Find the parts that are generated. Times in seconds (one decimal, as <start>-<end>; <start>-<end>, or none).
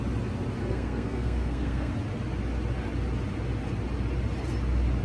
0.6-1.9